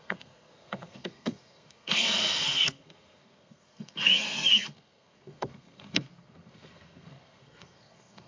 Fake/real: fake